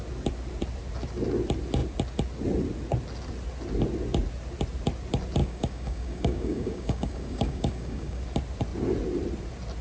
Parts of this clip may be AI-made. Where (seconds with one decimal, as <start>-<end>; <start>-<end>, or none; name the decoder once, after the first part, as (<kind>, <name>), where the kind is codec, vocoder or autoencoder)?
5.4-8.2 (codec, DAC)